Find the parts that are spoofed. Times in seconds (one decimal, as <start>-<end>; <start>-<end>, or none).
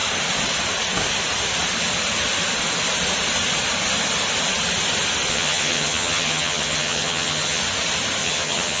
5.3-7.6; 8.2-8.8